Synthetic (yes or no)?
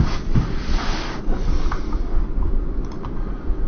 no